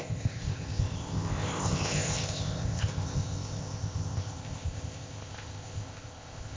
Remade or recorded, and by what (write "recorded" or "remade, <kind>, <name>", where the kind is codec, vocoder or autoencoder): remade, codec, ZipCodec